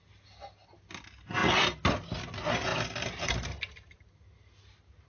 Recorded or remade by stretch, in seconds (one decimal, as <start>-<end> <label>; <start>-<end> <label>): 0.0-5.1 recorded